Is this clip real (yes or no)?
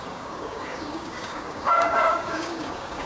no